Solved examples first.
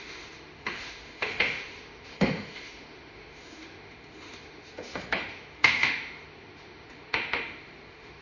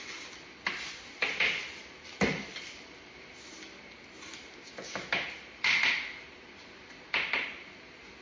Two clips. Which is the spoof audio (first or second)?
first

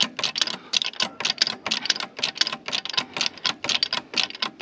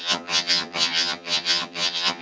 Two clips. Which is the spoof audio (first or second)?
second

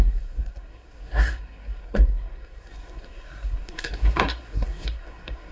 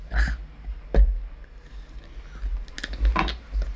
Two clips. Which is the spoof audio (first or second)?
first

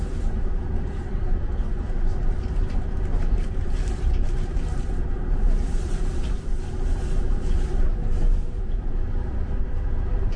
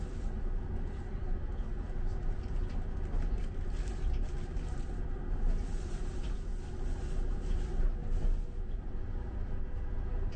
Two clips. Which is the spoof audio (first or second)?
first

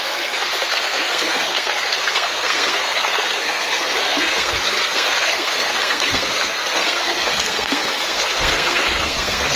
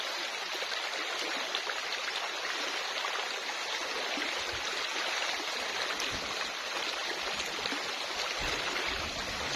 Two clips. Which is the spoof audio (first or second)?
first